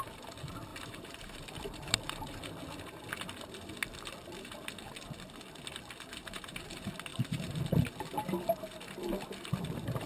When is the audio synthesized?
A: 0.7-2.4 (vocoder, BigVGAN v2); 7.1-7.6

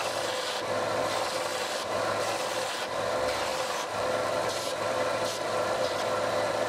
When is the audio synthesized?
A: 1.5-2.2 (vocoder, BigVGAN v2); 3.5-5.9

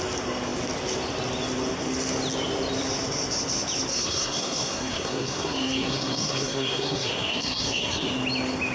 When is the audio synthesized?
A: 3.9-8.1 (codec, SNAC)

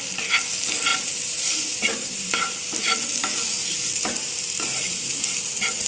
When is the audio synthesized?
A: 0.9-2.6 (vocoder, BigVGAN v2); 3.6-5.2